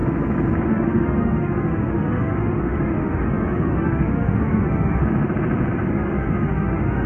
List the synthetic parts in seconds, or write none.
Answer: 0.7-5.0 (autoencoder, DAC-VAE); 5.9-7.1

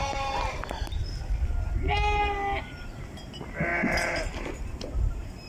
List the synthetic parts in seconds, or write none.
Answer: none

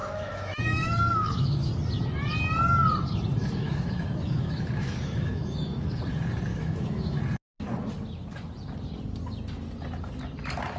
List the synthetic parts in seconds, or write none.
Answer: 0.0-1.7 (autoencoder, DAC-VAE); 3.4-6.0; 6.5-7.2